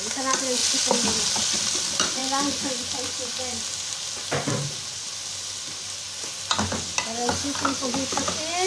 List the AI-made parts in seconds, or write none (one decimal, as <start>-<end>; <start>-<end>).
none